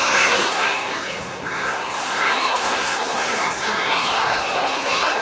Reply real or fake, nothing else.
fake